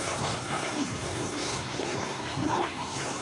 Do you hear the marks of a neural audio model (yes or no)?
yes